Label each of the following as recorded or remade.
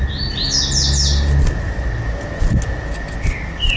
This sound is recorded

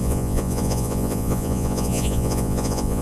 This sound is remade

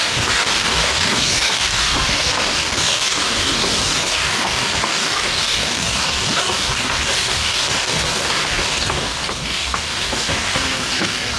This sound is remade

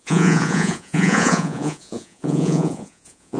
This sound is remade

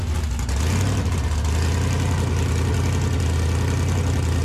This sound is recorded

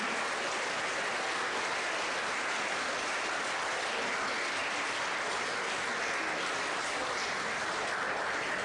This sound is recorded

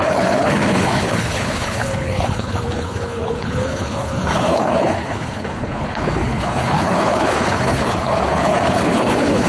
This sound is remade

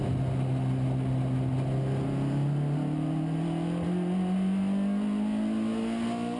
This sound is recorded